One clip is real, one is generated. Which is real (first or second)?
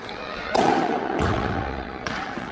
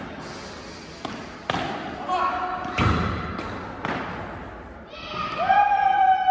second